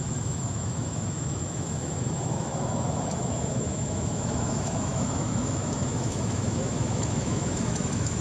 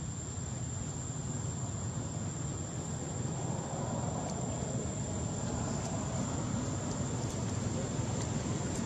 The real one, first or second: second